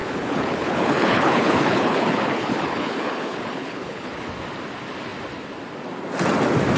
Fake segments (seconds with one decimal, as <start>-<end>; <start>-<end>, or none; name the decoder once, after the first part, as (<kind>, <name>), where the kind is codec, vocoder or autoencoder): 0.0-4.1 (codec, HILCodec)